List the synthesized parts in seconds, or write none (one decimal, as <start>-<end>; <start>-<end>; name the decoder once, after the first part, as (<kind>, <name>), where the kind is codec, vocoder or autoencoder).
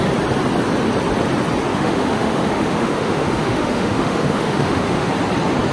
1.7-5.1 (autoencoder, DAC-VAE)